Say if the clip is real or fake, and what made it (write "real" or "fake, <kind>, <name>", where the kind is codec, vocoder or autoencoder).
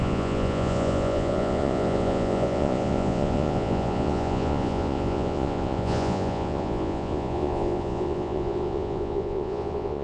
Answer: fake, vocoder, Vocos